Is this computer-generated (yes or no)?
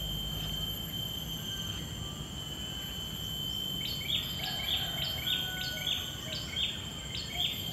no